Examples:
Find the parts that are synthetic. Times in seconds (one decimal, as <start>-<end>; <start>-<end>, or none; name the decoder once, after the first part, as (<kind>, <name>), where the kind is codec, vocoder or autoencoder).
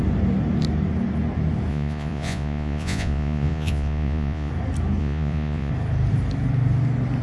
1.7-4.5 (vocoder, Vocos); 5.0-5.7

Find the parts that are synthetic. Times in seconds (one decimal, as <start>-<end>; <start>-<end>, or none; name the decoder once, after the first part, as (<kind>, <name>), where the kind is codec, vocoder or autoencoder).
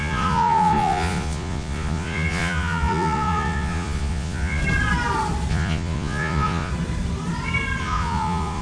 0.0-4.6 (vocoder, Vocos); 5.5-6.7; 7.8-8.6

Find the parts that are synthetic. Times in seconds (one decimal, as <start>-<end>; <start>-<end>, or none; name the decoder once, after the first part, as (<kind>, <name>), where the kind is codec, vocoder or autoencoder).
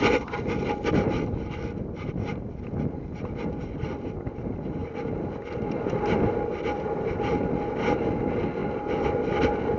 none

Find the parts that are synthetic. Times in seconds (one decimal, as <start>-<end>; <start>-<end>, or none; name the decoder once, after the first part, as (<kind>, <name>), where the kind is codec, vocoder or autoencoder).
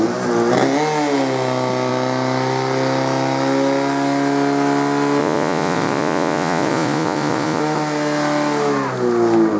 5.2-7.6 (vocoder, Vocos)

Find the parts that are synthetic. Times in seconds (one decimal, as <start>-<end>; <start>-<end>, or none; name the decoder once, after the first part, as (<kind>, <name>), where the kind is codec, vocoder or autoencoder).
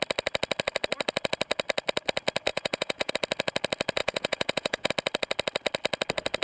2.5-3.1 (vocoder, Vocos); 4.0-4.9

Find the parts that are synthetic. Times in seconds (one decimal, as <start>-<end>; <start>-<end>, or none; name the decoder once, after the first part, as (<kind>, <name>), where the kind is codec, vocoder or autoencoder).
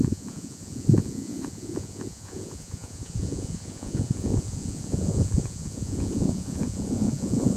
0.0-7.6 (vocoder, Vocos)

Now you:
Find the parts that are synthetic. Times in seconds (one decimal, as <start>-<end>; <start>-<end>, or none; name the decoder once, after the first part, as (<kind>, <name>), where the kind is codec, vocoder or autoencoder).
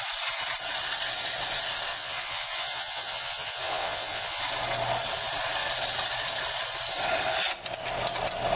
1.9-4.4 (vocoder, Vocos)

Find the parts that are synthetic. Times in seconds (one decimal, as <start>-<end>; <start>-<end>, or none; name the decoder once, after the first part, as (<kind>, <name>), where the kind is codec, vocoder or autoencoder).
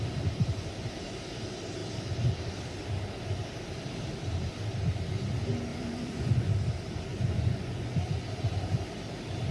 5.7-6.5 (vocoder, Vocos); 7.1-7.9